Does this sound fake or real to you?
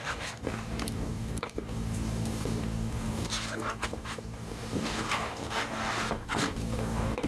fake